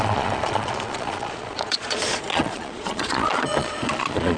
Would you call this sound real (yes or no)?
no